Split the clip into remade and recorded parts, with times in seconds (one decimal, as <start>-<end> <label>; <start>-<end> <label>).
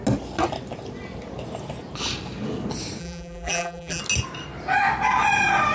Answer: 0.0-3.0 recorded; 3.0-4.0 remade; 4.0-5.7 recorded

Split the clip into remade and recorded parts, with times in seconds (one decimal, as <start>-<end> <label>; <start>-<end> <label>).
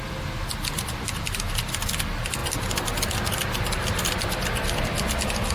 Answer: 0.0-5.5 recorded